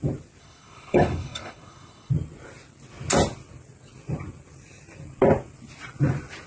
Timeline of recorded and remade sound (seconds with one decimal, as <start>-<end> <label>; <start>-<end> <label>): 0.0-0.4 recorded; 0.4-2.1 remade; 2.1-6.5 recorded